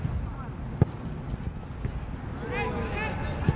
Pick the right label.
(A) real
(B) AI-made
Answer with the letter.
A